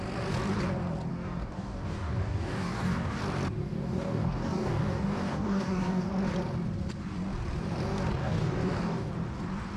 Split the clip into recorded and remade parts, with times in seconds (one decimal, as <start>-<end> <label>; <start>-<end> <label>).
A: 0.0-1.1 recorded; 1.1-3.2 remade; 3.2-3.6 recorded; 3.6-6.1 remade; 6.1-8.2 recorded; 8.2-9.1 remade; 9.1-9.8 recorded